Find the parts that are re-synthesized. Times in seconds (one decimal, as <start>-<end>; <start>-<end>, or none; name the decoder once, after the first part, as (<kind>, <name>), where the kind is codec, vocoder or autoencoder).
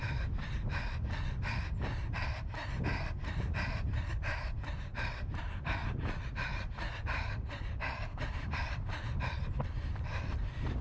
0.0-10.8 (vocoder, BigVGAN v2)